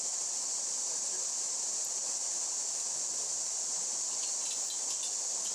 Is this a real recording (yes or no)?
yes